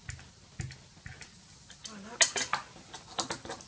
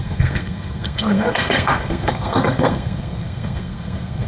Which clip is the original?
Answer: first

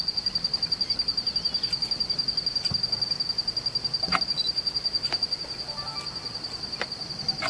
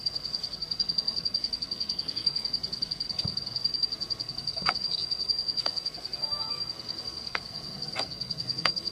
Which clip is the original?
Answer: first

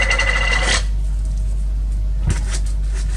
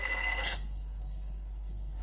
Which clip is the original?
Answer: first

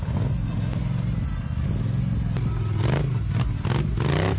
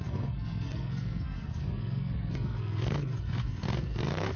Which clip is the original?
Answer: first